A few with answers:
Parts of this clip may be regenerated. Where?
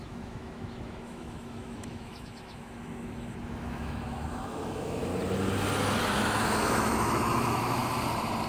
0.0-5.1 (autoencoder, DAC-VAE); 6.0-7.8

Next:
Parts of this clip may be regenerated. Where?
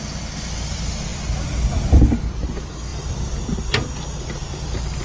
2.9-3.7 (vocoder, BigVGAN v2); 4.4-5.0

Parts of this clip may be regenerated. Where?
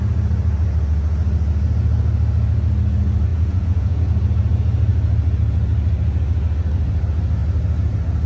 3.3-4.0 (vocoder, Vocos)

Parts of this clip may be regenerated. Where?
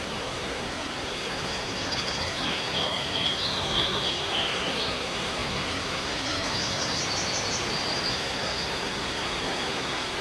0.0-7.0 (codec, SNAC); 8.1-10.2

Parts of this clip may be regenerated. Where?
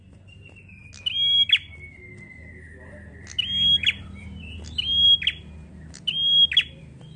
none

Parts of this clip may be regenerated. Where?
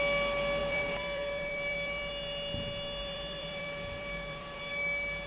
0.6-2.1 (vocoder, BigVGAN v2); 3.0-4.7